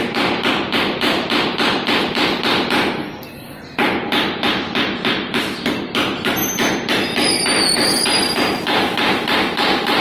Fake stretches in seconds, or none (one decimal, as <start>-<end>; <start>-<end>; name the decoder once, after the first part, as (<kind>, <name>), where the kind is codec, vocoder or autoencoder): none